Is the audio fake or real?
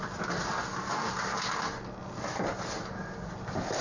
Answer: real